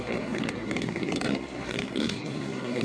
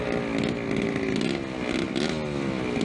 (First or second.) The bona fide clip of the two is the second